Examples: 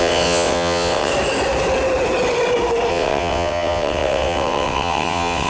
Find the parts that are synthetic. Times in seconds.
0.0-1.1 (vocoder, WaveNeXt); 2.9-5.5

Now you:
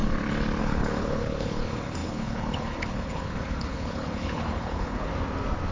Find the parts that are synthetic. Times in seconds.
0.6-5.1 (codec, HILCodec)

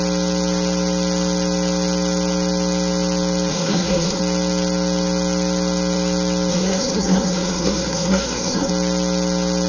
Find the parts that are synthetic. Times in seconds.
3.5-4.2 (codec, SNAC); 6.5-8.7

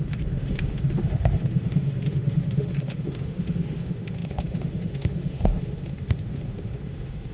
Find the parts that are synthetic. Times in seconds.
0.0-7.3 (autoencoder, DAC-VAE)

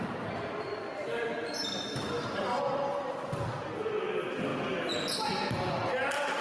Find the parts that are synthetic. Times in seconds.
0.0-2.8 (vocoder, BigVGAN v2)

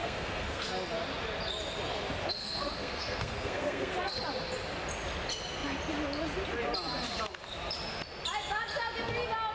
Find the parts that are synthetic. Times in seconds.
0.0-0.7 (codec, SNAC); 2.4-4.1

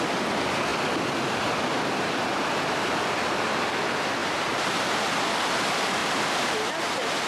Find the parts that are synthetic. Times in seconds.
4.2-4.8 (vocoder, BigVGAN v2); 6.0-6.7

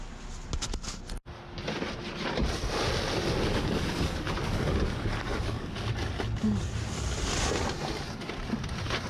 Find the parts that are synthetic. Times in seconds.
3.5-5.9 (codec, DAC)